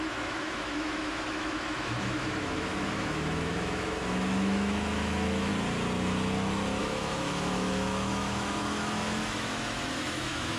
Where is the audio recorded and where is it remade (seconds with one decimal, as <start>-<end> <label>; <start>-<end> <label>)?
0.0-5.5 remade; 5.5-6.8 recorded; 6.8-10.6 remade